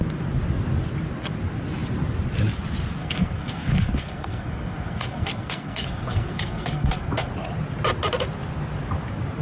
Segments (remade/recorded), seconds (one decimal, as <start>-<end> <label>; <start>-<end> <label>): 0.0-3.0 recorded; 3.0-7.3 remade; 7.3-9.4 recorded